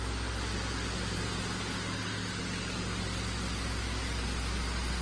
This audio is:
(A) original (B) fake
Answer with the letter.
A